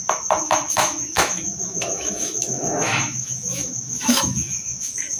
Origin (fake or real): fake